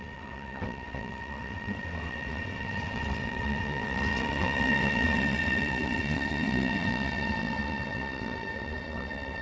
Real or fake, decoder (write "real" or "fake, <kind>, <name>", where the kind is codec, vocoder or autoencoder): fake, vocoder, WaveNeXt